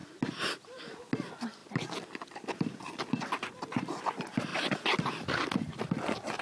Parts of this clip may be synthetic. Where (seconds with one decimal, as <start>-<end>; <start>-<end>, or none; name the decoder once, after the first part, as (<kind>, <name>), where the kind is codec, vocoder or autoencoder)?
1.6-4.0 (vocoder, BigVGAN v2); 4.5-5.8